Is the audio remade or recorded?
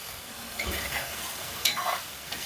remade